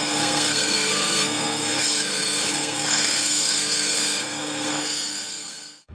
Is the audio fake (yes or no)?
yes